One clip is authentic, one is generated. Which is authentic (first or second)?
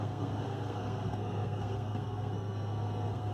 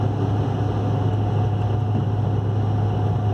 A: second